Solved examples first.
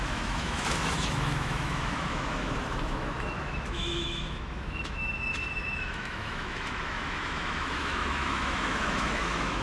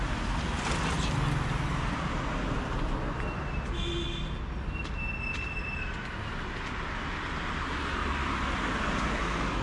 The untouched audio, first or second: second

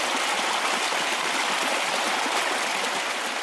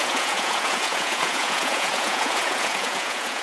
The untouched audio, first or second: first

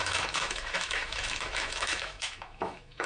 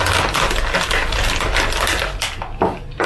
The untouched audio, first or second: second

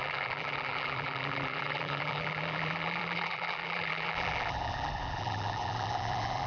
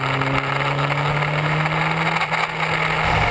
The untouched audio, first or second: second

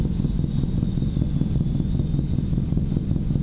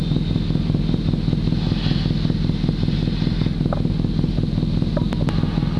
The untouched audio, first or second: second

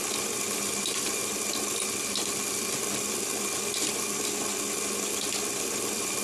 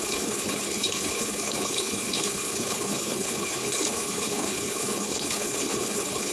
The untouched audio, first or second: first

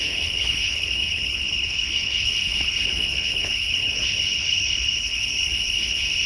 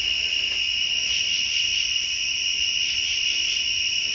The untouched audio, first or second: second